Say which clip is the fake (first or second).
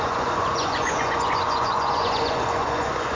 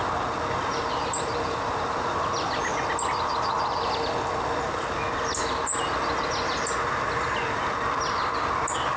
first